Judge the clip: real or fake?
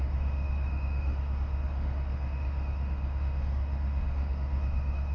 fake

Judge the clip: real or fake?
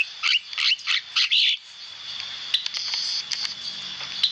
real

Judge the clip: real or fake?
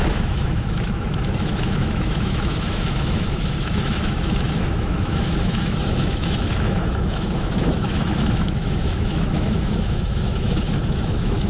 fake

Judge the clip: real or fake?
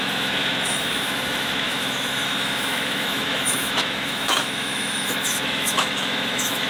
fake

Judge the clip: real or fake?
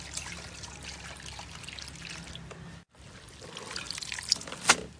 real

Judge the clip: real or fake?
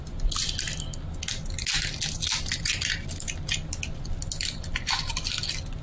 real